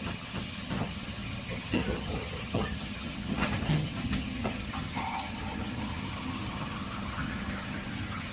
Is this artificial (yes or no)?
yes